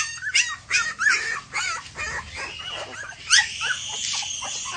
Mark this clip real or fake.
real